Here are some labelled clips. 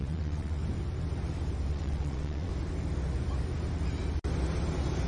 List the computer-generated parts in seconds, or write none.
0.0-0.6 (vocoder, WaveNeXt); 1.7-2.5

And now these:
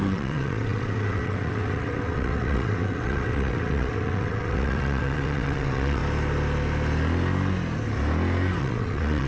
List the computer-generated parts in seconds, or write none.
0.0-6.0 (vocoder, WaveNeXt); 8.6-9.3

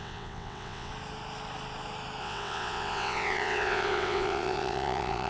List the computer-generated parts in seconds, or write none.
0.0-0.9 (vocoder, WaveNeXt); 2.2-5.3